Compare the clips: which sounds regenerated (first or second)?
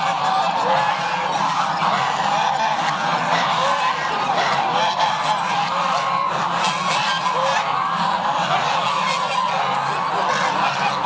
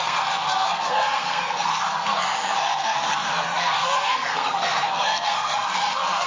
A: second